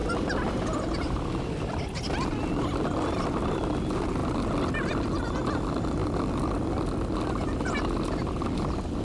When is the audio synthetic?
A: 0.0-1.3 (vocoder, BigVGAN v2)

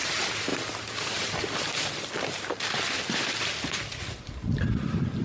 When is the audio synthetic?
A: 0.5-2.1 (vocoder, BigVGAN v2)

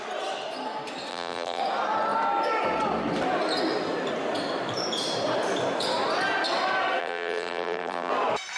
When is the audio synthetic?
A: 1.1-1.6 (vocoder, BigVGAN v2); 7.0-8.1

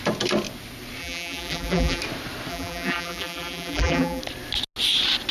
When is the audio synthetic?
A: 1.0-2.0 (vocoder, BigVGAN v2); 2.5-4.2

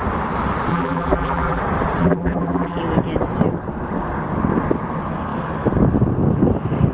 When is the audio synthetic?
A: 0.7-1.6 (vocoder, BigVGAN v2); 2.0-2.8

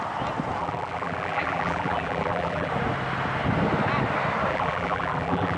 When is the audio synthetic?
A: 0.6-2.7 (vocoder, BigVGAN v2); 4.5-5.6